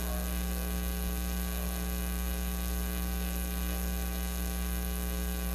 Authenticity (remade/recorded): remade